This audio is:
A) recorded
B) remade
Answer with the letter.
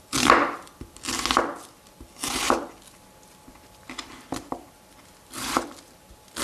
A